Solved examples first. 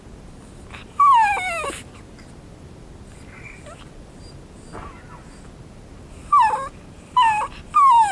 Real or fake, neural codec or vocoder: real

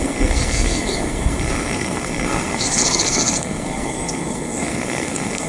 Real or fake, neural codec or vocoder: fake, codec, SNAC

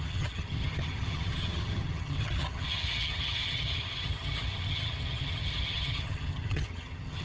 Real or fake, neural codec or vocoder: fake, vocoder, HiFi-GAN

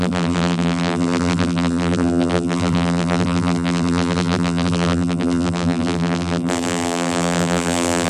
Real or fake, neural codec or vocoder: fake, vocoder, BigVGAN v2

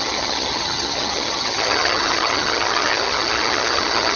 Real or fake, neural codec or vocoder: fake, vocoder, HiFi-GAN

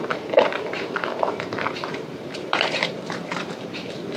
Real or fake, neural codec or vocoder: fake, vocoder, BigVGAN v2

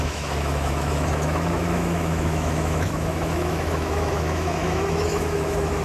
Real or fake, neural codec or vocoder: fake, autoencoder, DAC-VAE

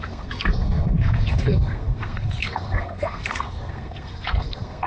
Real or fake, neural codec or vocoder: fake, codec, SNAC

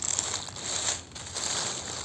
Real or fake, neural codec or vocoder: real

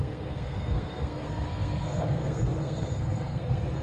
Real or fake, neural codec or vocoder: fake, codec, SNAC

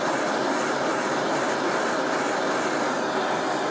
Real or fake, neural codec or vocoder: real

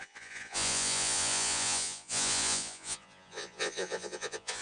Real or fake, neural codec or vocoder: fake, vocoder, Vocos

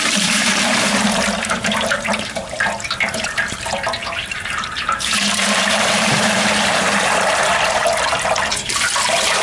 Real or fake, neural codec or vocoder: fake, vocoder, BigVGAN v2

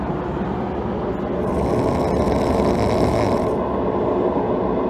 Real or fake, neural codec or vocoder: real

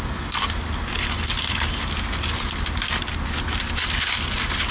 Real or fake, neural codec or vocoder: real